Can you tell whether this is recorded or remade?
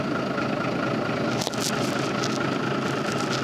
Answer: recorded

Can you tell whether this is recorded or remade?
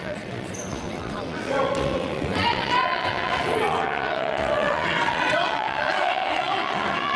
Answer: remade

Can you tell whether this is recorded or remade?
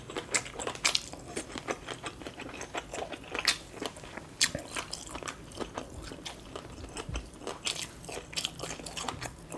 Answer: recorded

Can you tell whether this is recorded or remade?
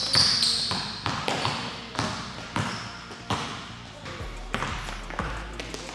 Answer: recorded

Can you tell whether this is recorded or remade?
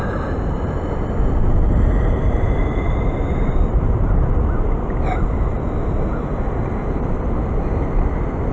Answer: recorded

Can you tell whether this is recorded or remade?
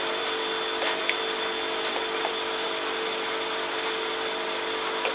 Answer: remade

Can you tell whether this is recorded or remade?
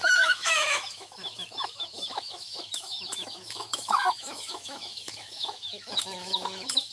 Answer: remade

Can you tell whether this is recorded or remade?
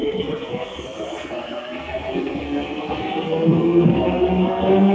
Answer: remade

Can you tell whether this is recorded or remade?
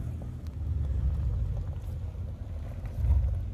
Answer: recorded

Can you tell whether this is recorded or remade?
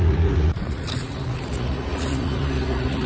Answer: remade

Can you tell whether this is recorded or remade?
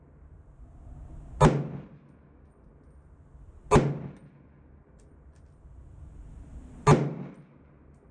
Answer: recorded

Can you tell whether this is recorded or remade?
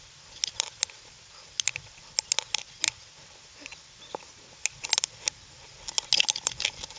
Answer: recorded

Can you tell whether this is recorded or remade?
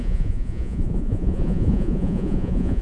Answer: remade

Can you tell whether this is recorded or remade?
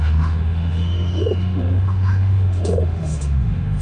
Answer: remade